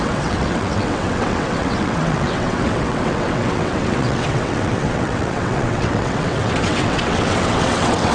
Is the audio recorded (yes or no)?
no